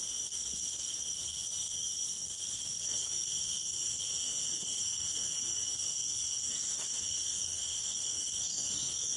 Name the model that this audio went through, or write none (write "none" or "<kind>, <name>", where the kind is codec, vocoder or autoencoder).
codec, SNAC